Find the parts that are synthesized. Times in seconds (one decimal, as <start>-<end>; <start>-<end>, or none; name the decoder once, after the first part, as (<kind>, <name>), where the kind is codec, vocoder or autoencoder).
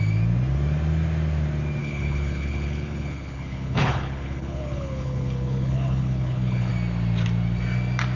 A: 1.8-6.7 (codec, HILCodec)